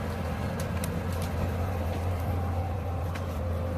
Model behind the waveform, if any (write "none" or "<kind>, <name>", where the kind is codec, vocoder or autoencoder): none